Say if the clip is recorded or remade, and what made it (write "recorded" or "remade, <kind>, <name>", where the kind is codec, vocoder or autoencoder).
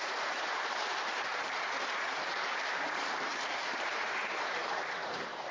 remade, vocoder, BigVGAN v2